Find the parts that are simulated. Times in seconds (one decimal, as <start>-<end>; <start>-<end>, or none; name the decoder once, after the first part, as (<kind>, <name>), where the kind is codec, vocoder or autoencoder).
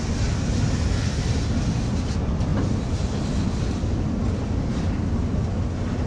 none